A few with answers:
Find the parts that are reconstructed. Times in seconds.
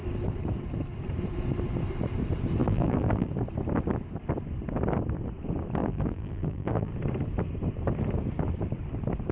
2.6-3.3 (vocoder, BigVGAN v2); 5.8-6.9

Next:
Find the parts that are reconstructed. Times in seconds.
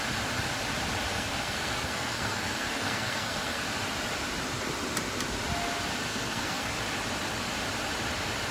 1.1-3.6 (codec, SNAC); 6.1-6.7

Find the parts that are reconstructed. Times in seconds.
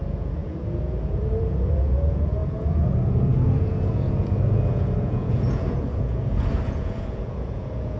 0.0-8.0 (vocoder, Vocos)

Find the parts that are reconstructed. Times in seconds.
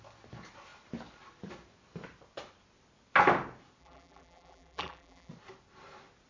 3.8-5.3 (vocoder, BigVGAN v2)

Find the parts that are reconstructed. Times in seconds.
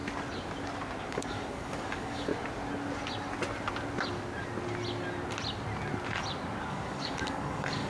1.1-2.3 (codec, DAC); 6.7-7.9